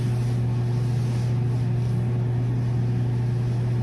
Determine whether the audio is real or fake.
real